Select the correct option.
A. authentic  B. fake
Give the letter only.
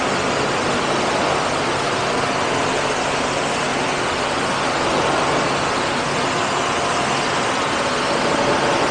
A